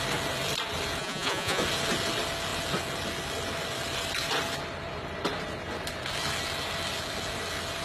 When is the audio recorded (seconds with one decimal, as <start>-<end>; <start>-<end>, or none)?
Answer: 0.0-1.0; 1.6-7.8